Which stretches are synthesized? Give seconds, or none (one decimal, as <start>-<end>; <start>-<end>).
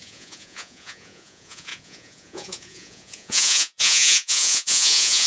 0.0-5.3